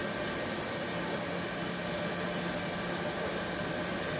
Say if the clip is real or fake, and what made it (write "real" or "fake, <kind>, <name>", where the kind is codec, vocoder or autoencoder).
real